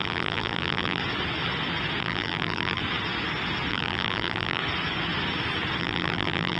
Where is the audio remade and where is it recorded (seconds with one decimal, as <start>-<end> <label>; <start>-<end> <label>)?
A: 0.0-1.0 remade; 1.0-2.0 recorded; 2.0-2.8 remade; 2.8-3.7 recorded; 3.7-4.6 remade; 4.6-5.8 recorded; 5.8-6.6 remade